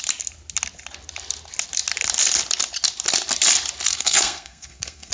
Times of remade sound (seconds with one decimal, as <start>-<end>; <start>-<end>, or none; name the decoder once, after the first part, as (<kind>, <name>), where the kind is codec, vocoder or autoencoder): 3.9-5.1 (codec, SNAC)